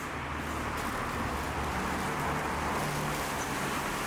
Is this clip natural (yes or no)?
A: yes